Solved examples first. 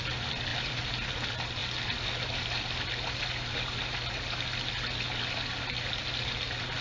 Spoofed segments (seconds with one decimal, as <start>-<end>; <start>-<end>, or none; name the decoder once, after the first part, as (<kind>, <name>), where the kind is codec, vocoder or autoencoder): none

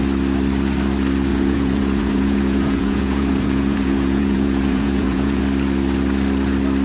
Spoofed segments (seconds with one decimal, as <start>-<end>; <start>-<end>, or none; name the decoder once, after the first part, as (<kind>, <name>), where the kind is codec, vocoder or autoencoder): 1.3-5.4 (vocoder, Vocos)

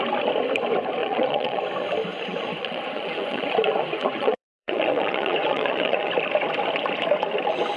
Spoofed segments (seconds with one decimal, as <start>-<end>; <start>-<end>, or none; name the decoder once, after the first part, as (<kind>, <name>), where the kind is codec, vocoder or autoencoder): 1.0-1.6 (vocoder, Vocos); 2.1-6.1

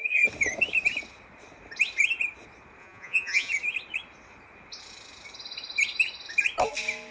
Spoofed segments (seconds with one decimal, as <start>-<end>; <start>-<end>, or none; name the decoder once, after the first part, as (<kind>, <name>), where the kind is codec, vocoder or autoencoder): 2.8-3.5 (vocoder, Vocos)

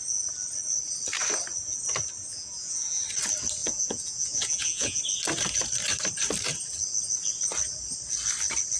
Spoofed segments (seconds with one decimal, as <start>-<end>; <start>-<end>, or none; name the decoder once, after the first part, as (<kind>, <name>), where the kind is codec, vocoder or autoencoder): 2.3-3.0 (vocoder, Vocos); 3.6-5.0

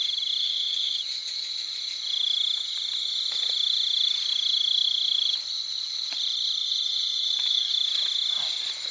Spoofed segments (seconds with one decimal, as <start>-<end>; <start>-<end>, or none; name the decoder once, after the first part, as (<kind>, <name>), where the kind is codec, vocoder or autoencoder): 0.4-1.5 (vocoder, Vocos); 6.6-7.7

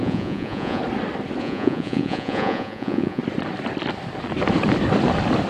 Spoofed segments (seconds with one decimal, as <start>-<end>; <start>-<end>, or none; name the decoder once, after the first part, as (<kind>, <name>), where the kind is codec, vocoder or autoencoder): 0.0-0.8 (vocoder, Vocos); 1.4-3.2

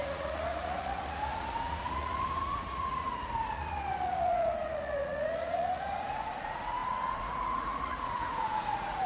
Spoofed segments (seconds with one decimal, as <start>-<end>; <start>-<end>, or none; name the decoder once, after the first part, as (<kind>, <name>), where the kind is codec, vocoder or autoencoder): 0.0-9.1 (vocoder, Vocos)